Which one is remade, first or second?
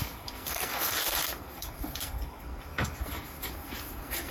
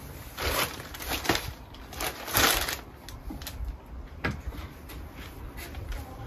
first